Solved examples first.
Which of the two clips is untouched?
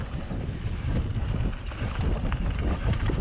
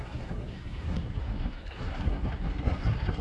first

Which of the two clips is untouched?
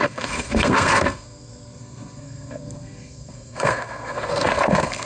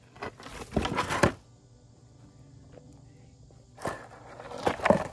second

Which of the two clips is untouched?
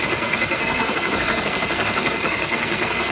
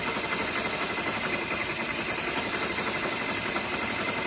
second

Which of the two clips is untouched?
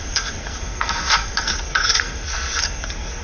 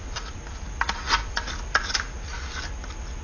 second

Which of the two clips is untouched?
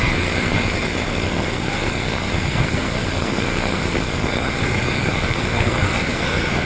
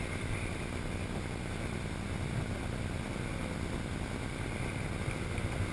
second